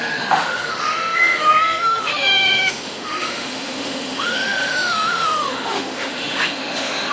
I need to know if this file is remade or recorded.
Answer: remade